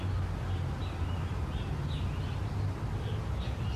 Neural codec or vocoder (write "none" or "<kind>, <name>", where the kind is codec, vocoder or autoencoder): none